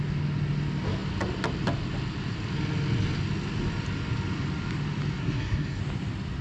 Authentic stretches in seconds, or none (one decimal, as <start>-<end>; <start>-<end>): 0.0-5.2; 5.8-6.4